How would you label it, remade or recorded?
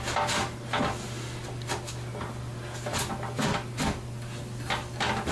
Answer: recorded